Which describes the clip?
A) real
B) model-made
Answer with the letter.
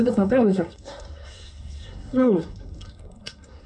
B